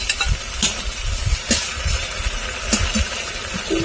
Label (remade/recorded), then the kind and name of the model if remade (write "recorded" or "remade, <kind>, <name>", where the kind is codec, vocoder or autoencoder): recorded